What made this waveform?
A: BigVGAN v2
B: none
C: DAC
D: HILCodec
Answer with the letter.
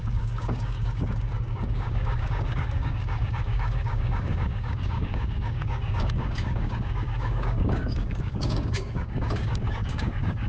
C